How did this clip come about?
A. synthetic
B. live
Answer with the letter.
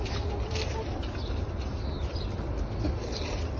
B